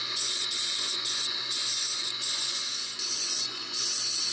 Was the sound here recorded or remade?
remade